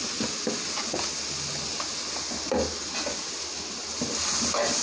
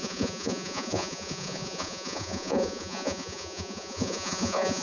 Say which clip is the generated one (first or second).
second